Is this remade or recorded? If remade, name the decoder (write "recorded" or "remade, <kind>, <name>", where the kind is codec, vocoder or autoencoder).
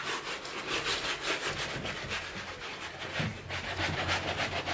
recorded